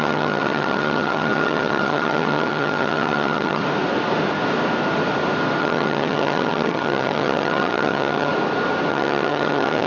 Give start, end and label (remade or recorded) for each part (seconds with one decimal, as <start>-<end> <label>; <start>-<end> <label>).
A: 0.0-3.6 remade; 3.6-5.6 recorded; 5.6-8.3 remade; 8.3-8.9 recorded; 8.9-9.9 remade